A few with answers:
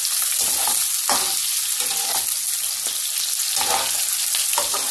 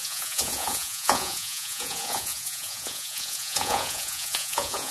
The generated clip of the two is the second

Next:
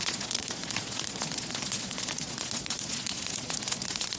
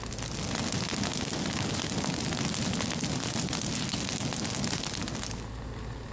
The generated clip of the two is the first